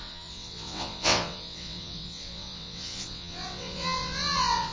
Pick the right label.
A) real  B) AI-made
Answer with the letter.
B